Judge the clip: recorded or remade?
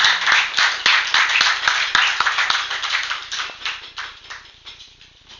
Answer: recorded